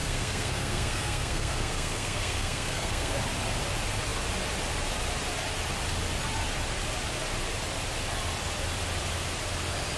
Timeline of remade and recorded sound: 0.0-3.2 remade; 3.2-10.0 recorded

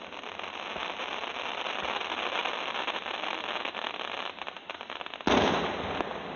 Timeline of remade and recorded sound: 0.0-6.4 recorded

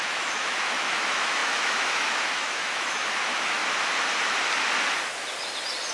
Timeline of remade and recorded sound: 0.0-3.6 remade; 3.6-5.9 recorded

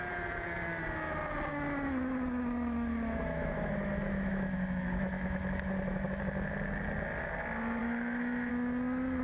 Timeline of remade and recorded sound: 0.0-1.5 recorded; 1.5-6.2 remade; 6.2-7.8 recorded; 7.8-8.5 remade; 8.5-9.2 recorded